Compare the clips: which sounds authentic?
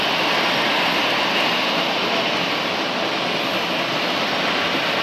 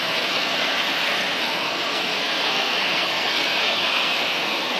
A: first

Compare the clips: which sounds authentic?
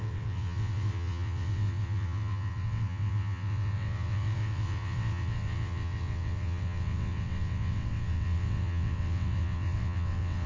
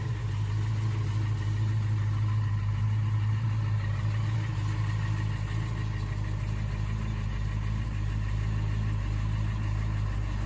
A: second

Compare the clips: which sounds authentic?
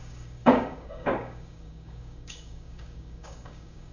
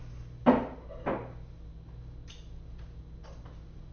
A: second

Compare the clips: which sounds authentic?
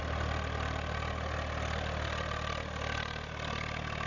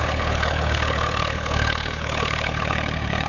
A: first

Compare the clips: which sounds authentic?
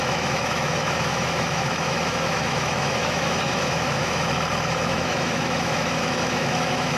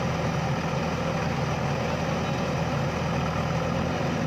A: second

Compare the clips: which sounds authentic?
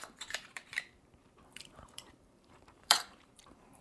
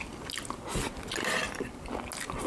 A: second